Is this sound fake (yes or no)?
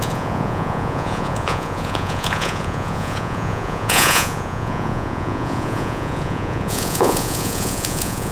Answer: yes